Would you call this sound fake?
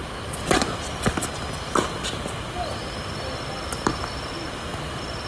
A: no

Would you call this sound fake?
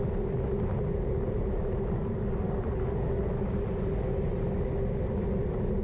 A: no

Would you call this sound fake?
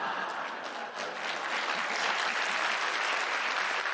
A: no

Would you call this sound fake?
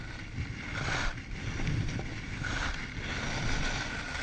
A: no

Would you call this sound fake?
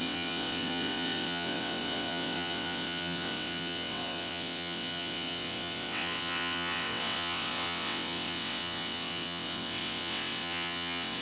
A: yes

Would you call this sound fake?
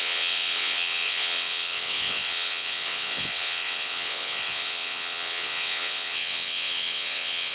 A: yes